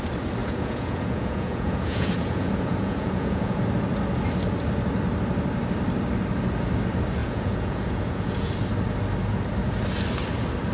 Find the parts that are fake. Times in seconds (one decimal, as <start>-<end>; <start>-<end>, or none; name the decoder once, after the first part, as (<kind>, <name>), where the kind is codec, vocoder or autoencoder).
0.4-3.6 (vocoder, Vocos); 7.2-8.5